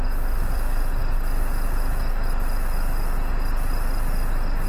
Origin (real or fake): real